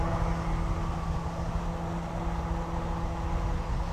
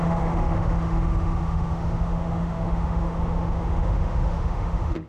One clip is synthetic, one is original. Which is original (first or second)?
first